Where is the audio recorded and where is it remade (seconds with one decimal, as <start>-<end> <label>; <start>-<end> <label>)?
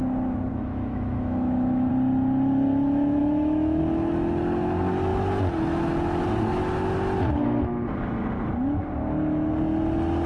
0.0-0.5 recorded; 0.5-1.9 remade; 1.9-3.2 recorded; 3.2-3.8 remade; 3.8-10.3 recorded